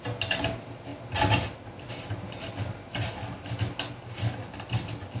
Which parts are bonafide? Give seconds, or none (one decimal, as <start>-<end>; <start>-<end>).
0.0-5.2